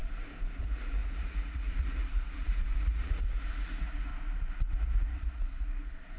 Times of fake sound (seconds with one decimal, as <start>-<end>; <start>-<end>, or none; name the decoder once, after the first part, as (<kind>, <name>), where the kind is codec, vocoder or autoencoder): 0.6-4.1 (vocoder, Vocos); 4.7-6.2